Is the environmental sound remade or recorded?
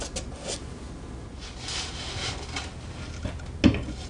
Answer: recorded